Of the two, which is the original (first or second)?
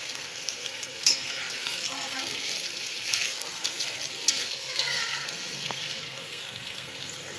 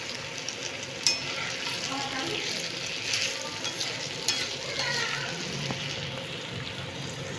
second